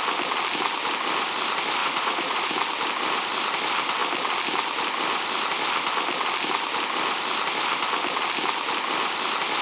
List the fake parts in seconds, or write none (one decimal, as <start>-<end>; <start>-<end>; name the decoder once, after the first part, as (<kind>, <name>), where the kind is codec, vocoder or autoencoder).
1.8-2.5 (vocoder, Vocos)